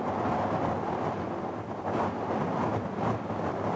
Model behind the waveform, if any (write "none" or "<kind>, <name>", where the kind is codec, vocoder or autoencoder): none